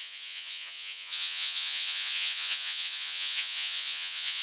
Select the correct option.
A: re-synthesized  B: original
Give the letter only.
A